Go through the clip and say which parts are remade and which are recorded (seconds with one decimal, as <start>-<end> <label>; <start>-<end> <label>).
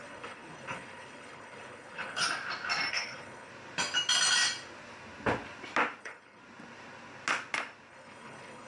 0.0-2.2 remade; 2.2-2.9 recorded; 2.9-3.5 remade; 3.5-6.0 recorded; 6.0-6.4 remade; 6.4-7.9 recorded; 7.9-8.7 remade